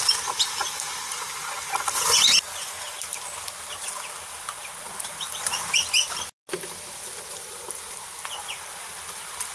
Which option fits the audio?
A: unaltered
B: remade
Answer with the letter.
A